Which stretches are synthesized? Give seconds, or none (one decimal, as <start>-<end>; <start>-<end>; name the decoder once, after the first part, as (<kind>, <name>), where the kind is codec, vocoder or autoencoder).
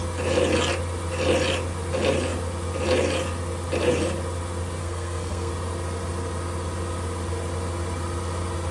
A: 4.8-5.5 (codec, SNAC)